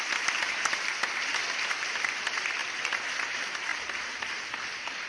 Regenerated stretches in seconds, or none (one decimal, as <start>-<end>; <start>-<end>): 0.0-5.1